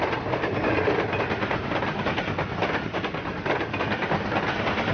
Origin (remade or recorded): recorded